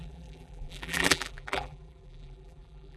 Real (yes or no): no